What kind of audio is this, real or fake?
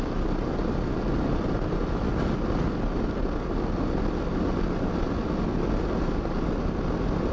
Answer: real